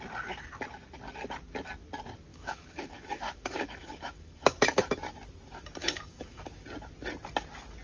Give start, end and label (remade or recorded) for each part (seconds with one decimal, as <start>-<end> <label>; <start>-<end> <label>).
0.0-2.3 recorded; 2.3-4.9 remade; 4.9-5.8 recorded; 5.8-6.4 remade; 6.4-7.8 recorded